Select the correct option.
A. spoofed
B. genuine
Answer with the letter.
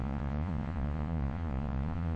A